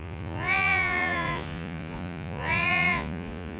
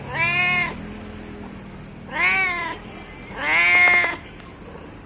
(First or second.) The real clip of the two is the second